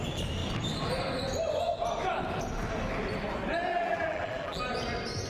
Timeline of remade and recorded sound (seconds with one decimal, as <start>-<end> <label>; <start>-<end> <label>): 0.0-3.7 recorded; 3.7-4.6 remade; 4.6-5.3 recorded